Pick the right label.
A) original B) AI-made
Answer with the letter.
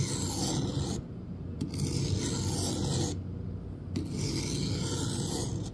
A